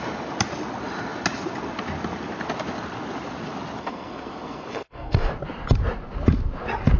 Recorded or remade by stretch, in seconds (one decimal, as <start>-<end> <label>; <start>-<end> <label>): 0.0-3.8 recorded; 3.8-5.3 remade; 5.3-7.0 recorded